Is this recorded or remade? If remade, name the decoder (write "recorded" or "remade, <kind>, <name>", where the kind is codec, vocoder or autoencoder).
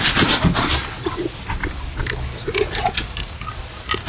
recorded